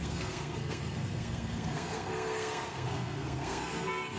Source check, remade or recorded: remade